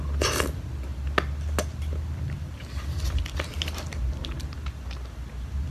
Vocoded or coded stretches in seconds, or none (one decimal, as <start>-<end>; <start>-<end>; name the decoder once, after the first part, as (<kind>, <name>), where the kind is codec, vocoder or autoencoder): none

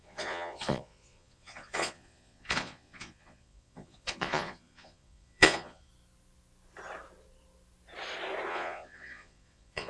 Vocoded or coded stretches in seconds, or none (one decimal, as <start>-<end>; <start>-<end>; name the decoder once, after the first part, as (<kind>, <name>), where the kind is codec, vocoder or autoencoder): 0.0-5.9 (vocoder, Vocos); 8.5-9.9

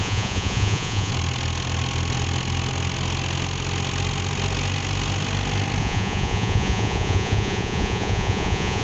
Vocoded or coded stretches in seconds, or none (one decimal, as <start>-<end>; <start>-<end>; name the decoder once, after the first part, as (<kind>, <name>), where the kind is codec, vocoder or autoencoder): 0.0-1.1 (vocoder, Vocos); 5.8-8.8

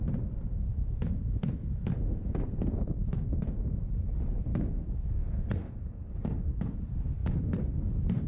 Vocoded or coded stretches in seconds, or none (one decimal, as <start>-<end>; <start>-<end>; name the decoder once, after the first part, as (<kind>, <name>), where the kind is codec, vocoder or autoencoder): 0.7-2.3 (autoencoder, DAC-VAE); 4.5-5.2

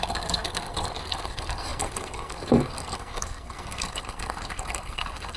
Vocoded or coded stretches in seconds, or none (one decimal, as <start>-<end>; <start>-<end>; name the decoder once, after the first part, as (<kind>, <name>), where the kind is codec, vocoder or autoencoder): 0.0-5.4 (codec, SNAC)

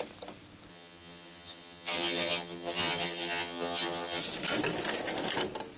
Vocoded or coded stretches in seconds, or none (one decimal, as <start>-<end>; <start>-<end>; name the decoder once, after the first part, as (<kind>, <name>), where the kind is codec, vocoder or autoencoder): 0.7-4.2 (vocoder, HiFi-GAN)